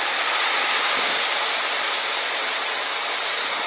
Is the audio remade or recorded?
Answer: remade